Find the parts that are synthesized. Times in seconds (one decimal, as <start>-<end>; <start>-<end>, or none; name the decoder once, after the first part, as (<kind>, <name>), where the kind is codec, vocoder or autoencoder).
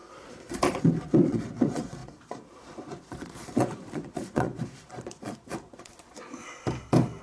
0.0-6.4 (vocoder, Vocos)